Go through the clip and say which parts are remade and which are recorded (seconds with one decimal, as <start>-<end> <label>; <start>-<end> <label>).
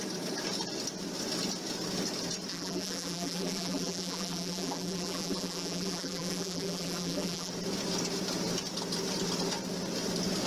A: 0.0-2.5 recorded; 2.5-7.5 remade; 7.5-10.5 recorded